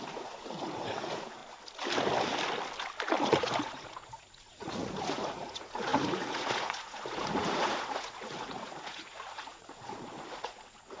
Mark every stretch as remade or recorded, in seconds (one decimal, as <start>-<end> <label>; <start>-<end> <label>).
0.0-1.4 remade; 1.4-3.2 recorded; 3.2-11.0 remade